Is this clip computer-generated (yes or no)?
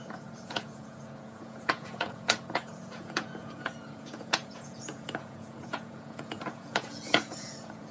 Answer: yes